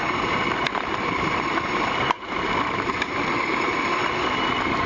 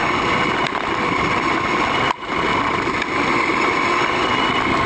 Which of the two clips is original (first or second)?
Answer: second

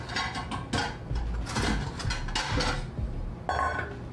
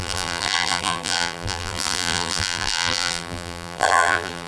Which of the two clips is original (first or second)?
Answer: first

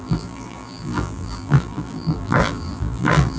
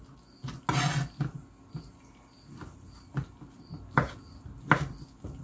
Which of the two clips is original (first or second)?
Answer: second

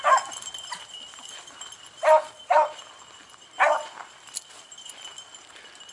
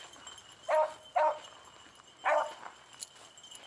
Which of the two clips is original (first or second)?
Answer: second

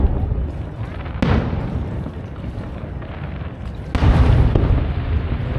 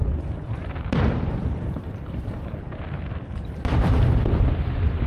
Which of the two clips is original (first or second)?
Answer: first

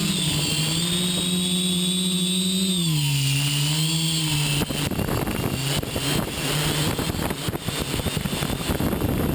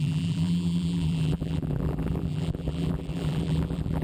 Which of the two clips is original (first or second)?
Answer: first